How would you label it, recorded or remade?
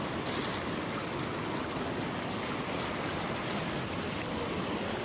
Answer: recorded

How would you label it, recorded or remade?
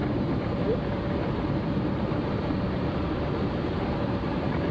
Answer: remade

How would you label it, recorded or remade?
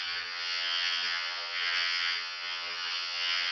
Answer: remade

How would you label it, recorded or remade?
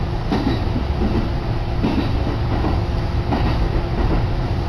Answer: recorded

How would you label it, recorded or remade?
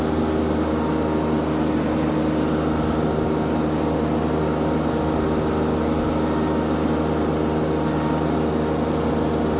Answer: recorded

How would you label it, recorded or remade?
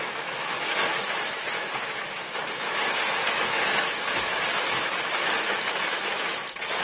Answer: remade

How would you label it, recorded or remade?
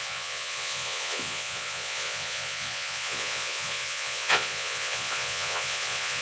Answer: remade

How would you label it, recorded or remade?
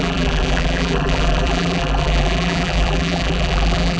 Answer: remade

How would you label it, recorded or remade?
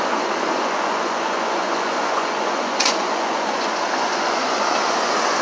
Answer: remade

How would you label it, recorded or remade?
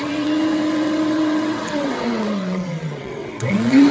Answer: remade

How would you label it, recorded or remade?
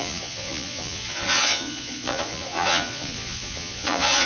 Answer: remade